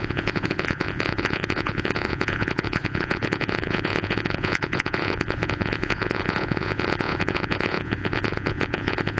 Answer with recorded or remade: remade